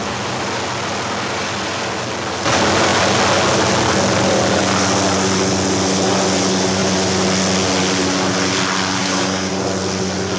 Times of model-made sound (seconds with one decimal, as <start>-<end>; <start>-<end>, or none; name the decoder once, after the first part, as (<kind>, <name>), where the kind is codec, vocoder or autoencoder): 9.0-9.5 (codec, DAC)